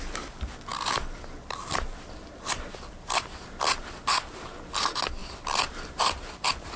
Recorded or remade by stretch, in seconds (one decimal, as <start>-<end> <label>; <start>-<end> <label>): 0.0-6.8 recorded